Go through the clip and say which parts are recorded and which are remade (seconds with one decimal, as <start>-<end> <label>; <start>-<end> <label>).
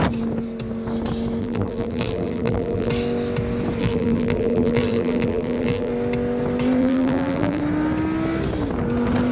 0.0-1.4 recorded; 1.4-2.9 remade; 2.9-3.8 recorded; 3.8-5.9 remade; 5.9-6.8 recorded; 6.8-7.6 remade; 7.6-9.3 recorded